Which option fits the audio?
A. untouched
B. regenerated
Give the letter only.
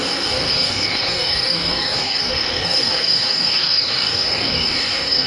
B